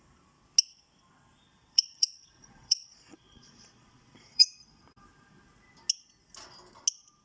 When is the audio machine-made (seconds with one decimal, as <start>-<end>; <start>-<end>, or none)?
1.5-4.8